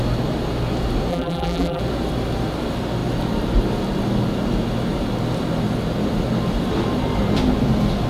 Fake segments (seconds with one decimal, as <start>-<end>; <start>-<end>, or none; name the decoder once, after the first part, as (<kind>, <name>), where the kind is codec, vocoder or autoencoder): 1.1-1.8 (vocoder, BigVGAN v2)